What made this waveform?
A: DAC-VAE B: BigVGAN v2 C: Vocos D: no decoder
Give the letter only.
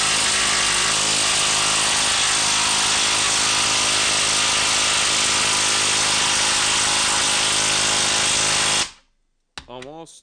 D